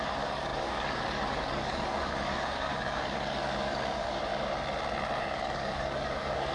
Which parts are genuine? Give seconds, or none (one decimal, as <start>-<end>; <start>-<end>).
4.3-5.2